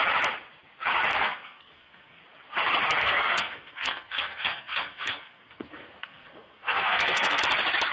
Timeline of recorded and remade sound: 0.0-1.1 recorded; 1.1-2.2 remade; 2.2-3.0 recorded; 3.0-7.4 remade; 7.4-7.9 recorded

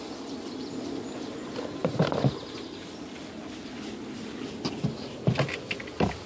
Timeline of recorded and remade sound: 0.0-6.3 recorded

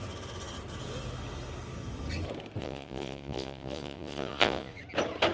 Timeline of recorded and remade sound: 0.0-2.6 recorded; 2.6-4.8 remade; 4.8-5.3 recorded

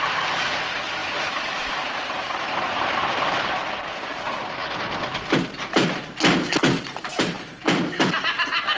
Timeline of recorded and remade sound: 0.0-1.0 recorded; 1.0-3.4 remade; 3.4-8.8 recorded

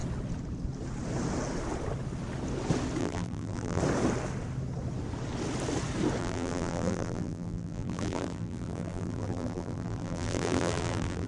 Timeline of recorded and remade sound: 0.0-3.0 recorded; 3.0-3.8 remade; 3.8-6.2 recorded; 6.2-11.3 remade

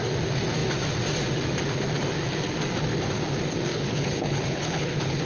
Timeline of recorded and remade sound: 0.0-3.7 recorded; 3.7-5.2 remade